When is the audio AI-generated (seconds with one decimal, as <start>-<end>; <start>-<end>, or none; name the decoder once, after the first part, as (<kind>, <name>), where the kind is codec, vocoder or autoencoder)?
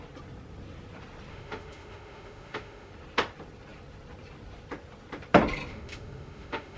1.3-2.9 (autoencoder, DAC-VAE); 5.7-6.8